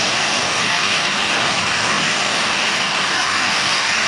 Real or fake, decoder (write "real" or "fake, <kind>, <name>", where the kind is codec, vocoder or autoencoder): fake, codec, DAC